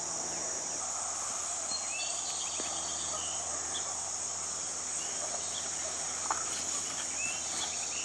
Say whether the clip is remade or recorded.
recorded